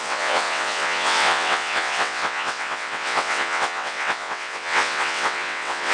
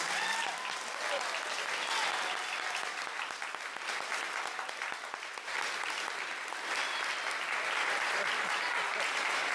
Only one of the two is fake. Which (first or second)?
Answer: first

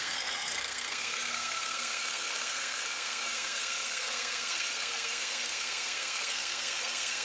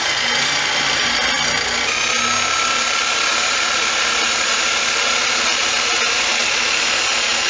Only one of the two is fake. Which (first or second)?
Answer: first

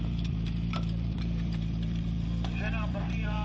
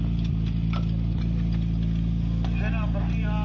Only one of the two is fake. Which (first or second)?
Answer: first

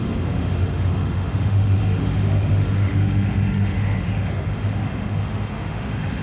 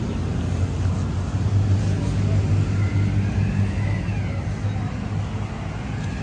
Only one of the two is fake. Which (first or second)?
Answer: first